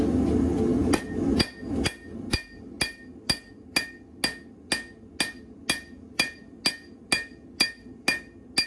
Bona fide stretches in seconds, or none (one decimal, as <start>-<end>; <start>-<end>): 0.0-8.7